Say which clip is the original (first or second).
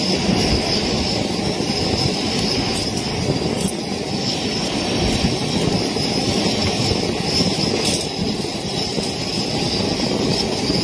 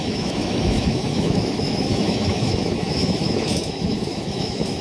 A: first